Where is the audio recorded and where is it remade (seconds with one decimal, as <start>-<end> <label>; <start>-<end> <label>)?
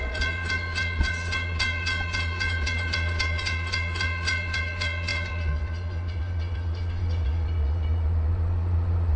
0.0-9.2 remade